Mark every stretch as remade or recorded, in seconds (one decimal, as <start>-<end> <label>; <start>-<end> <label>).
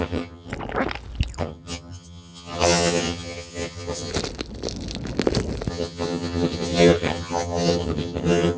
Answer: 0.0-0.5 remade; 0.5-1.4 recorded; 1.4-4.1 remade; 4.1-5.7 recorded; 5.7-8.6 remade